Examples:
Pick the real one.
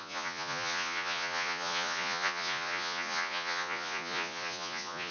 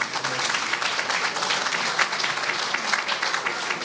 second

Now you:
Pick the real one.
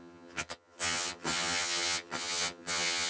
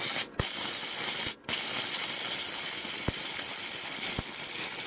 second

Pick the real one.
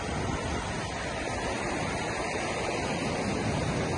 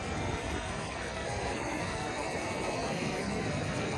first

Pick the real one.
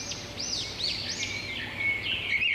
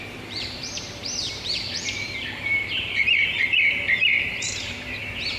first